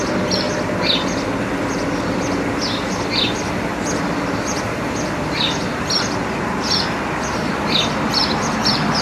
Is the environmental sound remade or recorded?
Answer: remade